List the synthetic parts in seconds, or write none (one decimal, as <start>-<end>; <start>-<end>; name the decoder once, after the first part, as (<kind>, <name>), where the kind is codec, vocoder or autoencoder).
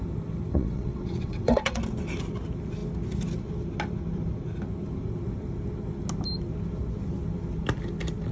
0.5-1.8 (vocoder, WaveNeXt)